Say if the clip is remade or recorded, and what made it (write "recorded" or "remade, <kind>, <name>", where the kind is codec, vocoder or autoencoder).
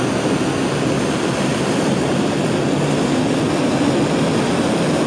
recorded